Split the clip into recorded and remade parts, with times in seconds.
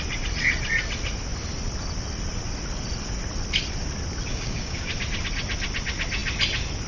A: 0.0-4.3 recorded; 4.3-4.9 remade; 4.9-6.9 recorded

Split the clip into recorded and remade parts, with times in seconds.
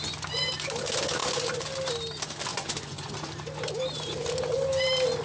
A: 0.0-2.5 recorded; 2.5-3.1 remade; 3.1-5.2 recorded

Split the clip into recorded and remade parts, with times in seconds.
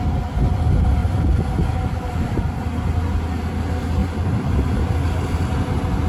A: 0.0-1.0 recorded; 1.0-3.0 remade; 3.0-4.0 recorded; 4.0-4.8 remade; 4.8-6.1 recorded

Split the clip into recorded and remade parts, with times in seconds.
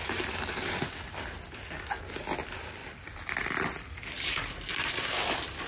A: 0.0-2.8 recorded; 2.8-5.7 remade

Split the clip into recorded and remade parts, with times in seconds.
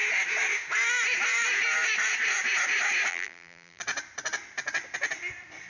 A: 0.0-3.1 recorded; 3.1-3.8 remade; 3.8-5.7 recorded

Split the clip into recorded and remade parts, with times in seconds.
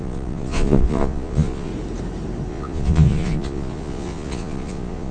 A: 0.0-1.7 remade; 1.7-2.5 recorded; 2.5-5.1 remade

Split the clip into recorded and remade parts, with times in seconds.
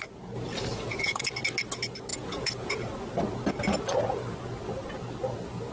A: 0.0-0.7 recorded; 0.7-1.3 remade; 1.3-2.1 recorded; 2.1-2.9 remade; 2.9-5.7 recorded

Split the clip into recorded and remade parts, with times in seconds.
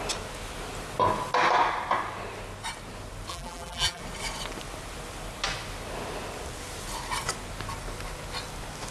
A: 0.0-3.3 recorded; 3.3-4.0 remade; 4.0-8.9 recorded